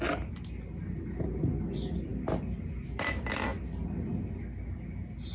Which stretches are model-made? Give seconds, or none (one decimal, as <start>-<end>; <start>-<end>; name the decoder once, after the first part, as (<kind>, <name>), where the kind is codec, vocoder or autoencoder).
none